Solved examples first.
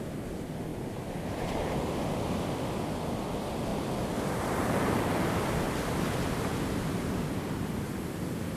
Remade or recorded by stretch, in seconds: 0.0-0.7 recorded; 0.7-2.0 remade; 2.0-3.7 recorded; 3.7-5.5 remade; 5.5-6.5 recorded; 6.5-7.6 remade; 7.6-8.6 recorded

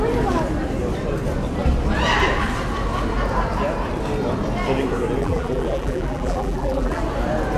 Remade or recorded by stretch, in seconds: 0.0-5.2 recorded; 5.2-7.0 remade; 7.0-7.6 recorded